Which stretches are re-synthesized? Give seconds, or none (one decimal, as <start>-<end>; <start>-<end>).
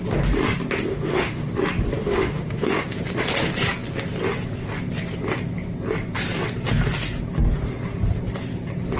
0.9-1.5; 2.0-2.9